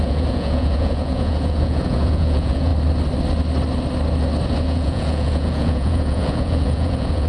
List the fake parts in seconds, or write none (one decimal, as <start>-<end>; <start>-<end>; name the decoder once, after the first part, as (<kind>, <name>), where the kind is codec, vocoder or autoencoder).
0.0-2.7 (vocoder, Vocos); 4.6-7.3